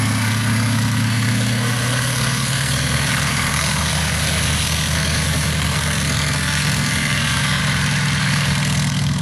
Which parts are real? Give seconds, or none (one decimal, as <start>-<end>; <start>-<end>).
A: 7.6-8.2